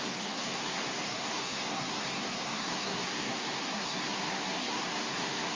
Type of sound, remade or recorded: remade